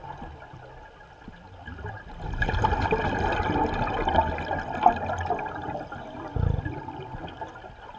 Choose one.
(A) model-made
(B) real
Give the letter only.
B